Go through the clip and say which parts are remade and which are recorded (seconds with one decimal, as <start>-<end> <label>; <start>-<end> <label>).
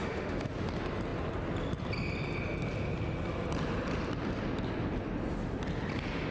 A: 0.0-0.5 remade; 0.5-6.3 recorded